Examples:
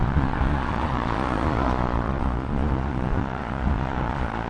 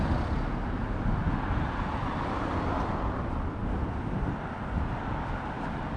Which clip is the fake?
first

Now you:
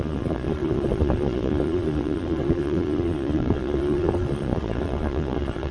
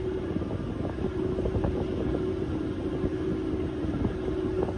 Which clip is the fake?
first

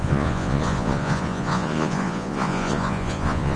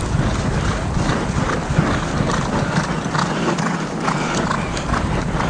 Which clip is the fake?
first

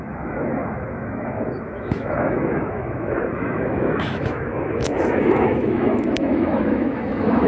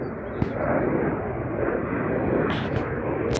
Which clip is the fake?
first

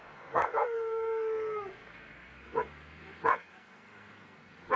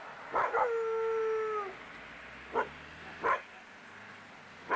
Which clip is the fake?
first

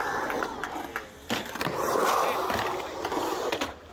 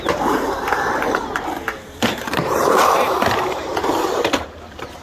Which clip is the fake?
second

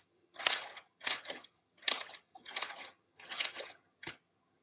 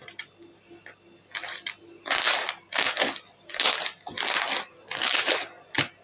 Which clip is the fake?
first